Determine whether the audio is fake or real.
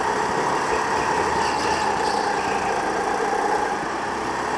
real